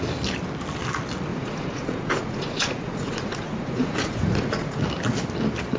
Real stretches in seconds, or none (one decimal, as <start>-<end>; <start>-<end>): 0.0-1.3; 4.8-5.8